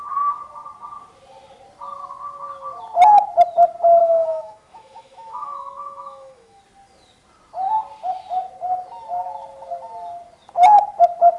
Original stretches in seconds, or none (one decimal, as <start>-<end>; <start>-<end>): 0.0-4.0; 6.6-11.4